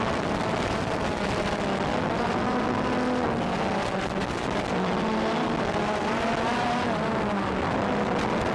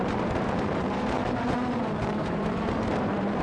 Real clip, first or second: first